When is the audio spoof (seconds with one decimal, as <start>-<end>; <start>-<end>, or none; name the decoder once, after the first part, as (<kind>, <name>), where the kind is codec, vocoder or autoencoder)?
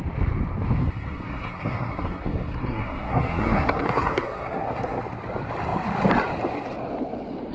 0.8-5.0 (codec, SNAC)